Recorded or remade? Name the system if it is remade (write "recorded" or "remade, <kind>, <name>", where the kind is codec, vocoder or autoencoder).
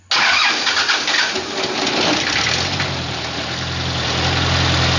recorded